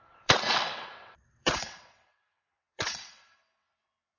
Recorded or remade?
remade